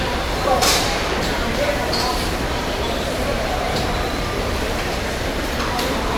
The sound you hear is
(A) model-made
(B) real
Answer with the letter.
A